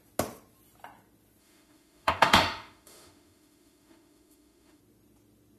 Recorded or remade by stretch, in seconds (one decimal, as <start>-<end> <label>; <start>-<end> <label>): 0.0-1.4 recorded; 1.4-4.8 remade; 4.8-5.6 recorded